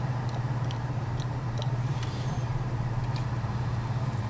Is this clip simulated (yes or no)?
yes